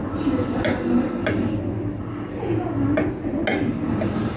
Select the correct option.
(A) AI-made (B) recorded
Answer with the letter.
B